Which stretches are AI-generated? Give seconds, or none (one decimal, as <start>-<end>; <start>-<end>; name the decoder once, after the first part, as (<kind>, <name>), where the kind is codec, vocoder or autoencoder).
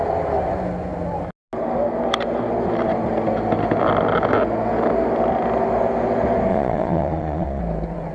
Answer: 6.5-7.6 (vocoder, Vocos)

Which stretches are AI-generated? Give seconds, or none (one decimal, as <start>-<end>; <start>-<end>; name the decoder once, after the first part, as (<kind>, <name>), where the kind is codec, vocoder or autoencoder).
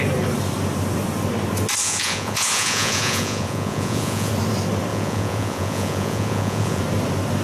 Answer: 1.8-4.3 (vocoder, Vocos); 4.9-6.8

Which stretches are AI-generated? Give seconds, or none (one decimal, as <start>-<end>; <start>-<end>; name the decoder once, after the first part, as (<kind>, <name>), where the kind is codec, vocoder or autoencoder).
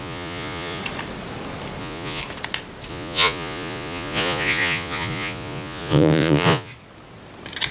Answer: 0.0-0.8 (vocoder, Vocos); 1.8-2.2; 2.9-6.7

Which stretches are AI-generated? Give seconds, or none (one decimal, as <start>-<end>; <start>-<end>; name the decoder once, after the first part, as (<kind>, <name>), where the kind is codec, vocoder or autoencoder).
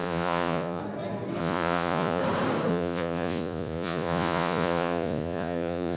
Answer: 0.0-0.8 (vocoder, Vocos); 1.4-2.2; 2.7-6.0